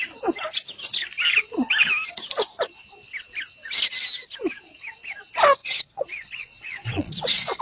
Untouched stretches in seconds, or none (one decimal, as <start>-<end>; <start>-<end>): 0.0-5.6